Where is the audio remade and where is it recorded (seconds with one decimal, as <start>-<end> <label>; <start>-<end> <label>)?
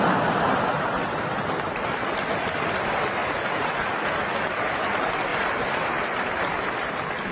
0.0-3.2 recorded; 3.2-4.1 remade; 4.1-7.3 recorded